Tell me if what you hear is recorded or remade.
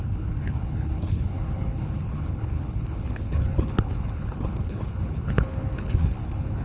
remade